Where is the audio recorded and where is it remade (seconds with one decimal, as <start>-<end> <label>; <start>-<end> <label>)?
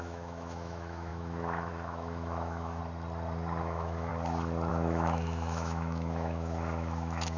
0.0-2.8 remade; 2.8-3.6 recorded; 3.6-4.1 remade; 4.1-4.7 recorded; 4.7-7.4 remade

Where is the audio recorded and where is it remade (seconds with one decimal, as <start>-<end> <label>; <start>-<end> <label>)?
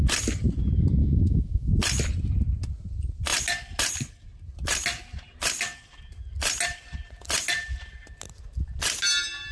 0.0-1.0 recorded; 1.0-1.7 remade; 1.7-9.5 recorded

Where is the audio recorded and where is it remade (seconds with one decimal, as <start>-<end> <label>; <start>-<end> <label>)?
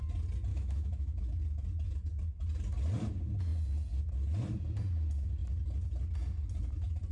0.0-0.5 recorded; 0.5-1.2 remade; 1.2-7.1 recorded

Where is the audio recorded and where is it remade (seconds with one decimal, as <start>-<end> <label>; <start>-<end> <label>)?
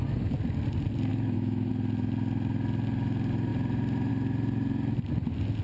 0.0-1.1 recorded; 1.1-1.7 remade; 1.7-5.6 recorded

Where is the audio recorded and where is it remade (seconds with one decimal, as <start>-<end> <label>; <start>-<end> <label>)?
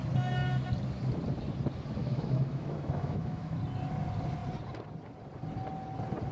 0.0-2.0 recorded; 2.0-3.6 remade; 3.6-6.3 recorded